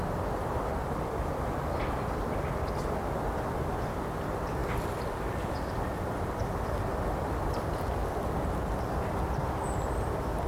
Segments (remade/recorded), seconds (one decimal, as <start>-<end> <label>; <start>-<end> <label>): 0.0-4.6 recorded; 4.6-7.6 remade; 7.6-10.5 recorded